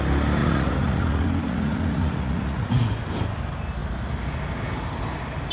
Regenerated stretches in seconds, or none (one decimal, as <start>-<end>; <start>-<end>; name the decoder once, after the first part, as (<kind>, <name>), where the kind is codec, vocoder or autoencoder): 0.4-2.8 (vocoder, Vocos)

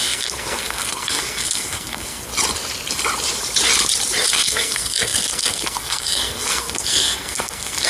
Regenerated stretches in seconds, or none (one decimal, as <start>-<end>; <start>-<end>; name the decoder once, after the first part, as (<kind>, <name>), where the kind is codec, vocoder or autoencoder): 0.0-2.3 (codec, SNAC); 4.3-7.9